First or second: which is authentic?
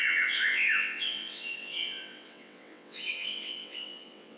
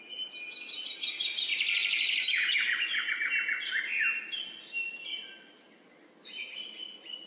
second